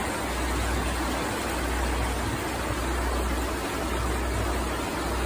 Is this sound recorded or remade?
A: recorded